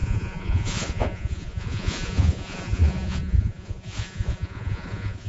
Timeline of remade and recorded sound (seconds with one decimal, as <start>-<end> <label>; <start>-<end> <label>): 0.0-5.3 remade